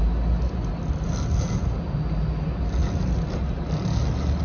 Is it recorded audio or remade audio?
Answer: recorded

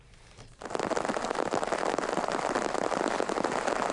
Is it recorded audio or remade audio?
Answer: recorded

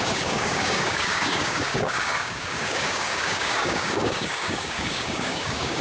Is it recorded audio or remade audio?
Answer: remade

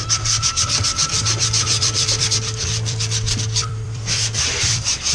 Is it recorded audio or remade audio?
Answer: remade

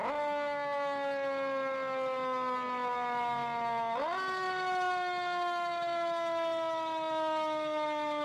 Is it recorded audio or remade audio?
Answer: recorded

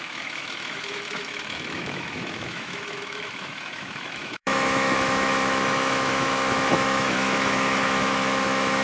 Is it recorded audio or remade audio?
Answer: remade